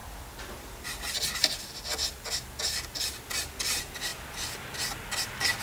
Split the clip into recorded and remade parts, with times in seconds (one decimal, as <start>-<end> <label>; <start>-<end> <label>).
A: 0.0-0.8 remade; 0.8-4.1 recorded; 4.1-4.8 remade; 4.8-5.6 recorded